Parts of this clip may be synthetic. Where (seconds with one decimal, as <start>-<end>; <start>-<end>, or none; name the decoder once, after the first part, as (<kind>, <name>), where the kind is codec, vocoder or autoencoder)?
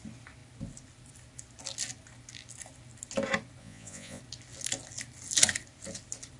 3.6-4.2 (vocoder, Vocos)